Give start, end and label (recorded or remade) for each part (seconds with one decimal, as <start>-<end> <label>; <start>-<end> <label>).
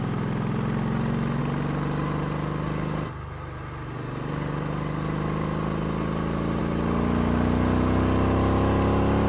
0.0-9.3 recorded